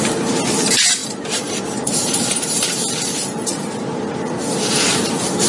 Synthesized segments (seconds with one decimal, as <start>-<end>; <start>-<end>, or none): 1.0-4.3